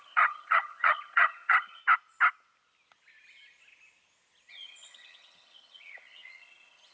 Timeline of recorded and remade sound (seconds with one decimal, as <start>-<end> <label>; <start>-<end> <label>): 0.0-1.8 remade; 1.8-4.5 recorded; 4.5-6.9 remade